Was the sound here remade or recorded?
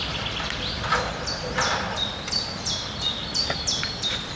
remade